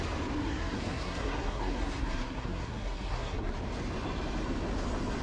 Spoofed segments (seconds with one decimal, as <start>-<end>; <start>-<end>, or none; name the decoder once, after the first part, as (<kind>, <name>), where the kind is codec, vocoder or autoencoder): 0.4-3.5 (codec, SNAC)